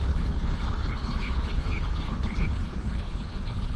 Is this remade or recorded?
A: remade